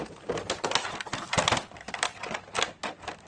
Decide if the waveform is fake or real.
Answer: real